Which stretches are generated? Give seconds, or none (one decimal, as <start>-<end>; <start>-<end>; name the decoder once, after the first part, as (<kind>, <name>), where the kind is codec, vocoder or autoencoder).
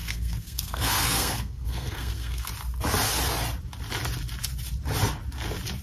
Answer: 0.0-2.5 (codec, SNAC)